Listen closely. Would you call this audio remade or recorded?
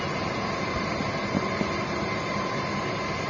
recorded